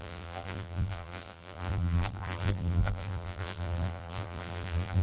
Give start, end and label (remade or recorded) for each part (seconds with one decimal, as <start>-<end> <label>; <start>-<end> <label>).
0.0-5.0 remade